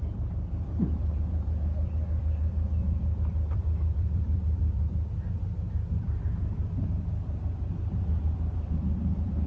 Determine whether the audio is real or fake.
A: fake